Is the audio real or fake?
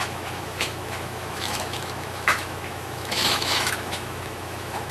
fake